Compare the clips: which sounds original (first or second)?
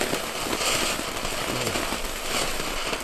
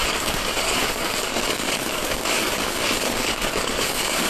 first